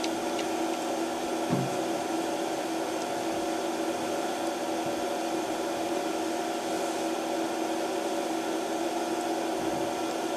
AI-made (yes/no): no